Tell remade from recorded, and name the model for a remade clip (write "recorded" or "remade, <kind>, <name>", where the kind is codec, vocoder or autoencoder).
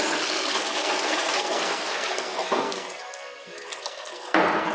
remade, codec, SNAC